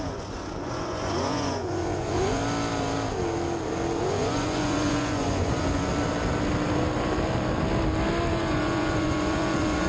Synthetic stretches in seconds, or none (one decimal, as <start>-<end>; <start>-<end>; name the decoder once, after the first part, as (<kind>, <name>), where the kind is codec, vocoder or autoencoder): 0.0-2.4 (vocoder, Vocos); 4.0-5.9; 8.3-9.9